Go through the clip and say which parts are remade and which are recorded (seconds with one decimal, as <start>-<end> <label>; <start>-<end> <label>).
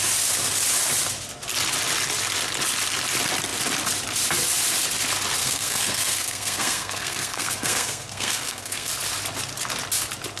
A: 0.0-5.4 recorded; 5.4-8.9 remade; 8.9-10.4 recorded